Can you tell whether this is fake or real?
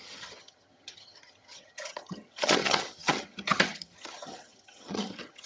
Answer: fake